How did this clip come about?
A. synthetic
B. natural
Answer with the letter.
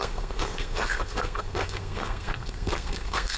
A